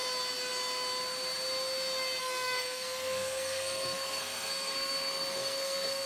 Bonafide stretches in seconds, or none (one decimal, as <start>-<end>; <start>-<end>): 0.0-2.2

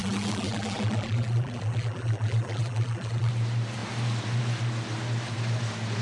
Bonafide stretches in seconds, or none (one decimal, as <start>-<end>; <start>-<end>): 3.3-6.0

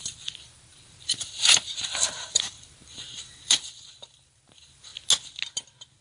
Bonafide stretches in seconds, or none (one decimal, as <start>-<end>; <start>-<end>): 4.9-6.0

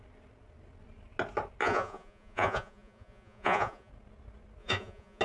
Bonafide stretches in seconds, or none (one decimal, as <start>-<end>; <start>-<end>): 0.0-1.6; 3.9-4.6

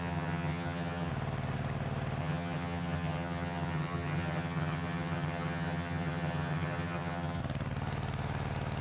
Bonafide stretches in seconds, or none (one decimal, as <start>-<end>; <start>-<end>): 1.1-2.2; 7.4-8.8

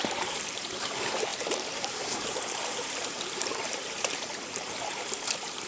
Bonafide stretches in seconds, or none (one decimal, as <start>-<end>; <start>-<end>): none

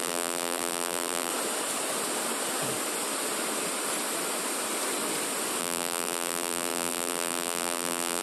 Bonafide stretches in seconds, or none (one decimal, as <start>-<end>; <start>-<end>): 1.3-5.6

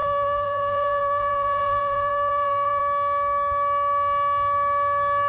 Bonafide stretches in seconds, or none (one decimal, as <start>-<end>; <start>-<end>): 2.8-5.3